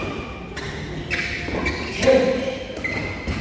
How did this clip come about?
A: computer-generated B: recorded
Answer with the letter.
B